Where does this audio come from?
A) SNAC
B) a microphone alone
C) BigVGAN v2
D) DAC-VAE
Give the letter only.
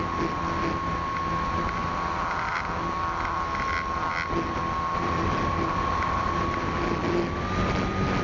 B